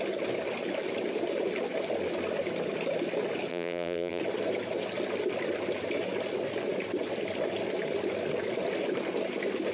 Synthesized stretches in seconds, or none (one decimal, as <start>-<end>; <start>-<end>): 3.5-4.2